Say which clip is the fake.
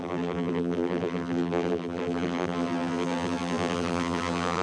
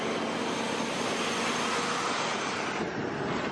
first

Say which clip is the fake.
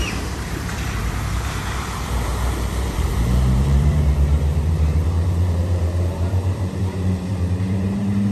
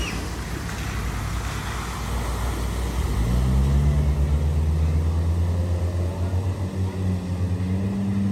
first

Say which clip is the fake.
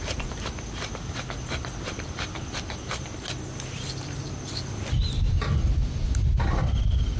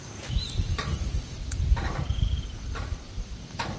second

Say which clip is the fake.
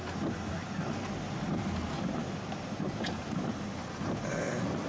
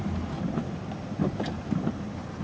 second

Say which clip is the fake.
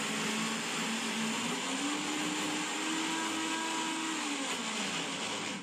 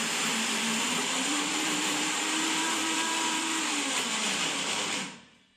second